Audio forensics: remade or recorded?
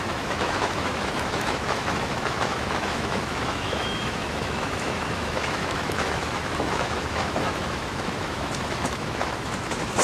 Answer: remade